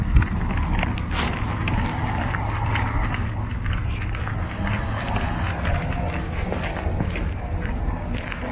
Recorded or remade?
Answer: recorded